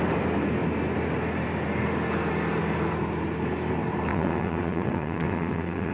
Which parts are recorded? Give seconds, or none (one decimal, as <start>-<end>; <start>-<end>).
0.0-4.1